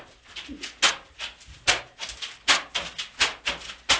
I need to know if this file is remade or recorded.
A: recorded